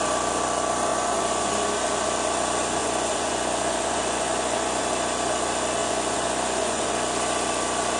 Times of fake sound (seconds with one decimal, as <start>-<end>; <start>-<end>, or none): 0.9-1.5; 2.8-4.8; 5.8-6.9